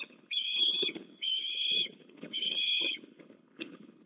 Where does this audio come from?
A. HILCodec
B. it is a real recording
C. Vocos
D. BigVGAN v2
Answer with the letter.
A